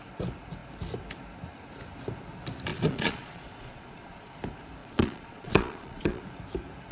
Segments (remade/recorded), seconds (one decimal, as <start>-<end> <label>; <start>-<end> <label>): 0.0-2.7 recorded; 2.7-4.3 remade; 4.3-4.8 recorded; 4.8-6.2 remade; 6.2-6.9 recorded